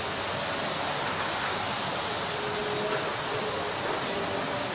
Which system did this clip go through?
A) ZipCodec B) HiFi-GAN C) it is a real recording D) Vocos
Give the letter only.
C